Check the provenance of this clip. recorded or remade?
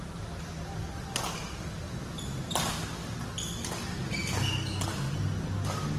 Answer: recorded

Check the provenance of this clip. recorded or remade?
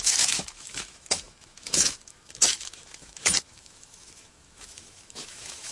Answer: remade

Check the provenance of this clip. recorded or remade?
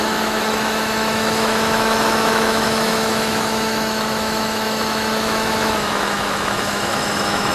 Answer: remade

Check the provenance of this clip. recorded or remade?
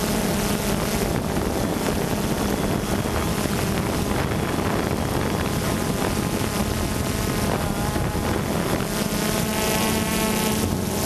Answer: recorded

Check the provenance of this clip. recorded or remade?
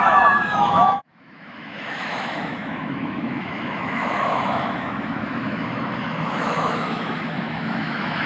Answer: remade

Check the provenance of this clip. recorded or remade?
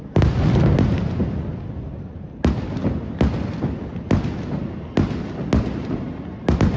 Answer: recorded